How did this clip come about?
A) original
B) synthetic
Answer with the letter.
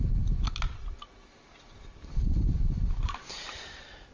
A